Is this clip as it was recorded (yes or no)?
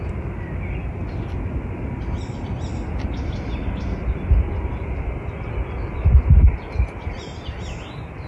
yes